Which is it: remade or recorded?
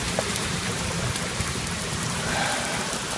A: remade